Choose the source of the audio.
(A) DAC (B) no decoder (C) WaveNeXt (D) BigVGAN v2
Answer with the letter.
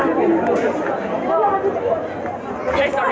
B